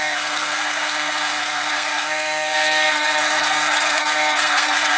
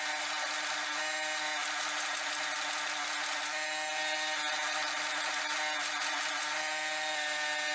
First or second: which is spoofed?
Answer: first